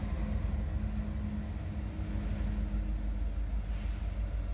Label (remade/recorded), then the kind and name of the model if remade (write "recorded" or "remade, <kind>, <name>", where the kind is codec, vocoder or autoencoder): recorded